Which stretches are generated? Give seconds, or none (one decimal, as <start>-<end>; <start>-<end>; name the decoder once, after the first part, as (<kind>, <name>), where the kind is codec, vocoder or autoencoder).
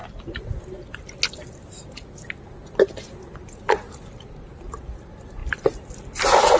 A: none